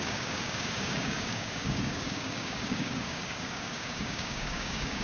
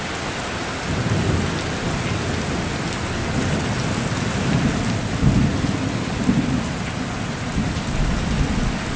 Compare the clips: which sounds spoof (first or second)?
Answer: first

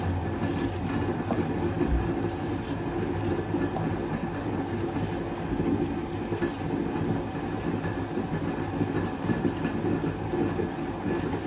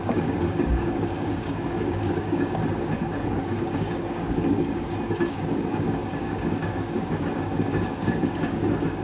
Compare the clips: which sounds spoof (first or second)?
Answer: second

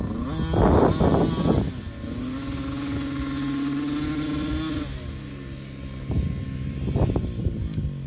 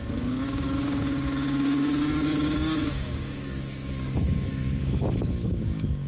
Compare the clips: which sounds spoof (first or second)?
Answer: second